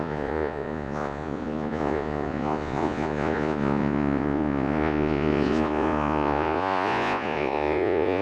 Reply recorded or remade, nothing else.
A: remade